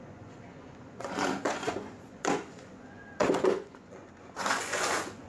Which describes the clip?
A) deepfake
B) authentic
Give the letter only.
A